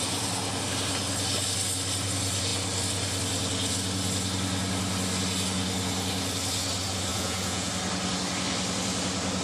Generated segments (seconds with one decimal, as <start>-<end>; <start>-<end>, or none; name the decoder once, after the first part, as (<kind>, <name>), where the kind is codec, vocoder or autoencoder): 7.1-7.7 (vocoder, Vocos)

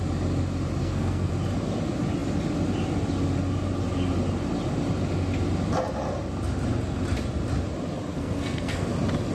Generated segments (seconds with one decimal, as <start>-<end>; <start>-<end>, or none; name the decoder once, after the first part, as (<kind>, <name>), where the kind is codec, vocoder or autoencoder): 0.8-1.3 (codec, SNAC); 8.1-8.9